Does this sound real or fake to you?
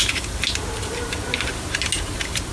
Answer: real